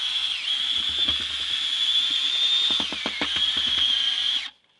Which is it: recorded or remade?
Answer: recorded